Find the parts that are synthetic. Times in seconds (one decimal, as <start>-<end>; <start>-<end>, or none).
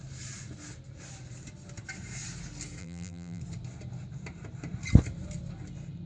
2.8-3.4